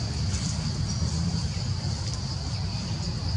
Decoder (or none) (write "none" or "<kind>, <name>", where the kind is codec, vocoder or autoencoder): vocoder, BigVGAN v2